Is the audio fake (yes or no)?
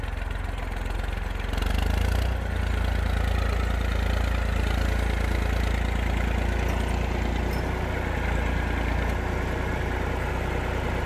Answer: no